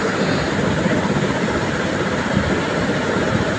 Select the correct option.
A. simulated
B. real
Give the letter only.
B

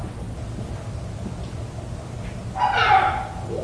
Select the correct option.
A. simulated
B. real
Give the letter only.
B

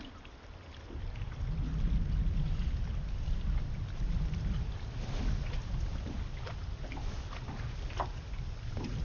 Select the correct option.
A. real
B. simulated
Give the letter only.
A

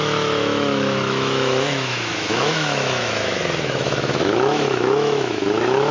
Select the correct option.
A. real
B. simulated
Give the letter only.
B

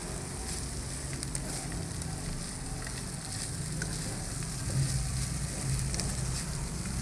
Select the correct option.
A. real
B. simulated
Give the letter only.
A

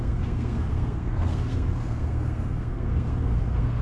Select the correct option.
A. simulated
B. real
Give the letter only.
A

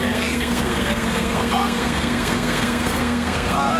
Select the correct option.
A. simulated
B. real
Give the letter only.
A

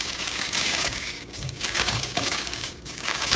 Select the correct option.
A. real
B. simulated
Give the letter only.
B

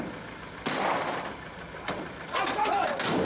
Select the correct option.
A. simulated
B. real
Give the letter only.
B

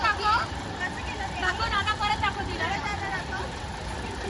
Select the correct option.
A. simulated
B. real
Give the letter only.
A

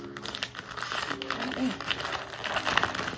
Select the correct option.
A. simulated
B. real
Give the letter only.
B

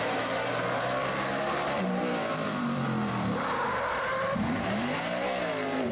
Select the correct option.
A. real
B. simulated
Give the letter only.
B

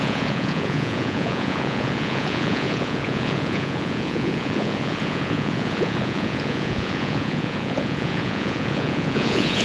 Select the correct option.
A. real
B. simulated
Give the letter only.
B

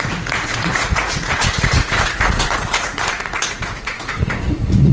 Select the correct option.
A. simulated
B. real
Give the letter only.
A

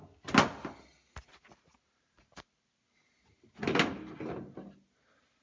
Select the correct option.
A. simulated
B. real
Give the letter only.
B